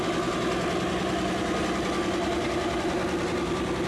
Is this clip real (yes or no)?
yes